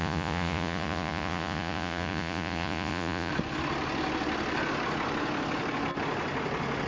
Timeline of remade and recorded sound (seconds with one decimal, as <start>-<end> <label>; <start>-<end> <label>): 0.0-3.3 remade; 3.3-6.9 recorded

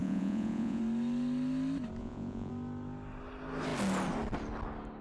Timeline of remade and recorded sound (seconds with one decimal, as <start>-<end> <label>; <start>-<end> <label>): 0.0-0.8 remade; 0.8-2.0 recorded; 2.0-2.5 remade; 2.5-5.0 recorded

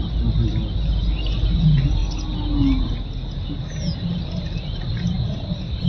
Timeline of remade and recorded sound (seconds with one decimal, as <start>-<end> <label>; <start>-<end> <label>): 0.0-5.9 recorded

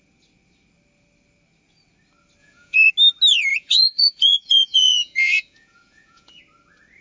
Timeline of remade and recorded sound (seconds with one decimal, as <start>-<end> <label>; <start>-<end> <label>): 0.0-2.4 recorded; 2.4-2.9 remade; 2.9-3.5 recorded; 3.5-6.4 remade; 6.4-7.0 recorded